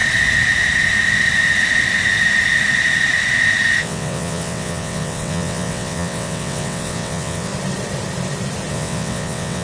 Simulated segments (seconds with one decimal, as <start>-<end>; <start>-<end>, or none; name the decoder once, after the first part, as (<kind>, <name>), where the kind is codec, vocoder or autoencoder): 3.8-7.5 (vocoder, WaveNeXt); 8.7-9.6